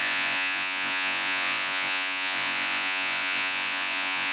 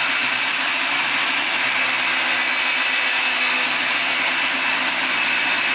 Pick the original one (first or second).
second